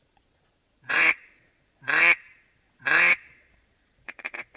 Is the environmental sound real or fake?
fake